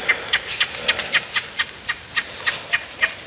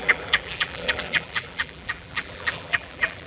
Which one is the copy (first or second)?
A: second